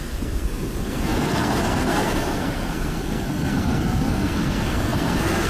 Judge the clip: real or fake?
fake